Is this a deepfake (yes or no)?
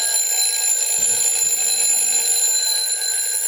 no